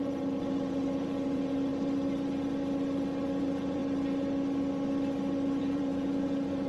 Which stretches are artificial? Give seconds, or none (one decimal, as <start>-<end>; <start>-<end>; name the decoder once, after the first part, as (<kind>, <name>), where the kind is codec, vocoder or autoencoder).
0.0-1.7 (vocoder, Vocos); 3.4-3.8; 5.6-6.7